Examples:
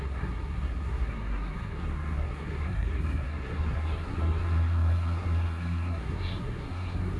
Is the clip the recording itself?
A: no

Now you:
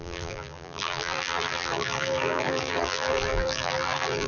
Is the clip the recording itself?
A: no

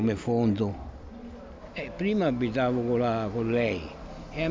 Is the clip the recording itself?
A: yes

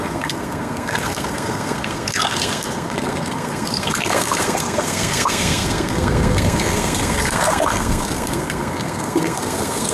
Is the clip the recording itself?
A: no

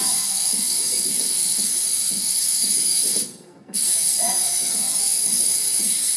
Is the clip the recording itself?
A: no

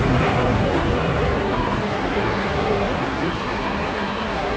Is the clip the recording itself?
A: no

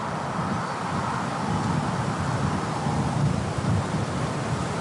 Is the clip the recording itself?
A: yes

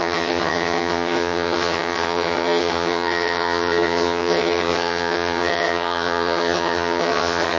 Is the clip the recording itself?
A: no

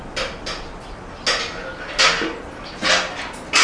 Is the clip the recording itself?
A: yes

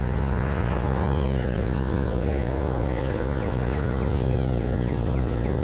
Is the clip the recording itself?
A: no